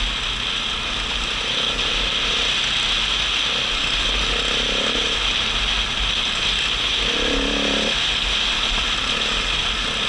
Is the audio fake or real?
real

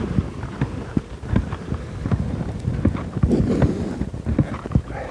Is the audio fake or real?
real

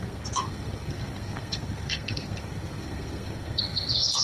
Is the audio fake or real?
fake